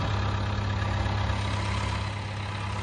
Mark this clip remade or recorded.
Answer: recorded